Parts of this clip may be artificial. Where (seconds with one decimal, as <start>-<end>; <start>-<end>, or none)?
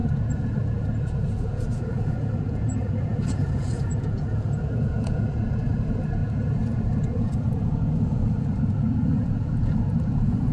0.0-10.5